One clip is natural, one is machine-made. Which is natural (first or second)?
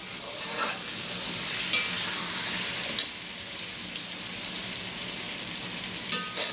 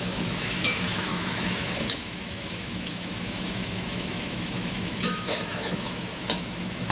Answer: first